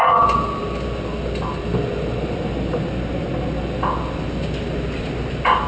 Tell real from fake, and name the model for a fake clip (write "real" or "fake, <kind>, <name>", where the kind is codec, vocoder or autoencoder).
real